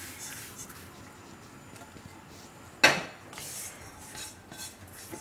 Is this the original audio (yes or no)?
yes